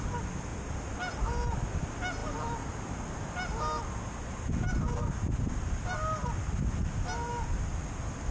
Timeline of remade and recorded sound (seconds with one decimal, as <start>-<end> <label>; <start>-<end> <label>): 0.0-8.3 recorded